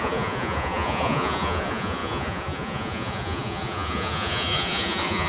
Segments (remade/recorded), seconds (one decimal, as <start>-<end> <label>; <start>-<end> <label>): 0.0-5.3 remade